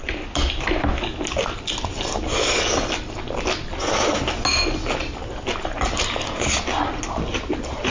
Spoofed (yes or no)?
no